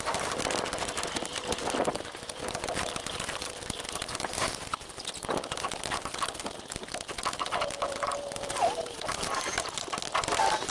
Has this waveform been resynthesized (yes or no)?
yes